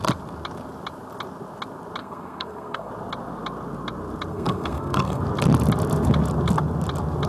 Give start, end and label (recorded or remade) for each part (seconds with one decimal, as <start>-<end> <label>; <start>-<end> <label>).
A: 0.0-2.0 recorded; 2.0-2.9 remade; 2.9-4.3 recorded; 4.3-5.2 remade; 5.2-7.3 recorded